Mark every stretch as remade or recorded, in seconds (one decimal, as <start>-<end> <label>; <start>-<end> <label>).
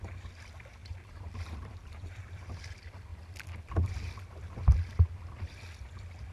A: 0.0-0.8 recorded; 0.8-2.1 remade; 2.1-6.3 recorded